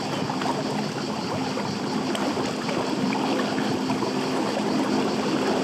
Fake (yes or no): no